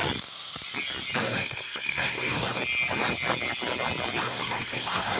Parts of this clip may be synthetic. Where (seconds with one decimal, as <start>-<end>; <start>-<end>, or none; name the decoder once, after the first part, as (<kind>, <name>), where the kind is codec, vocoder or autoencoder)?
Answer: 1.2-2.6 (codec, SNAC); 4.2-5.2